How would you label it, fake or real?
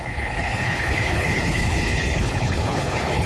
fake